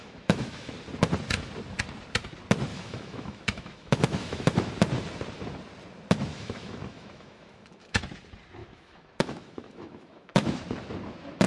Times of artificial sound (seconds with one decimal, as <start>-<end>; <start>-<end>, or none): 0.0-0.7; 2.7-4.7; 6.3-8.0; 8.6-10.6